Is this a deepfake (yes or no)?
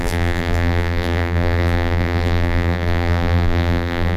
yes